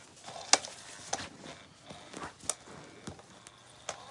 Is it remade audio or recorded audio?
recorded